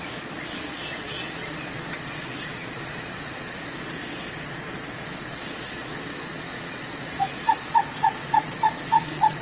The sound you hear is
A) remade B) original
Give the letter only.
A